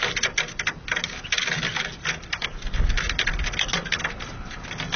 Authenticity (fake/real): real